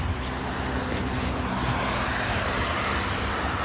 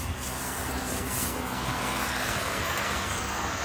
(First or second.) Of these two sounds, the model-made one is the second